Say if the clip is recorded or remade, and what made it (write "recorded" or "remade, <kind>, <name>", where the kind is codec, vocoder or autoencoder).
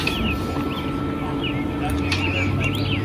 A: recorded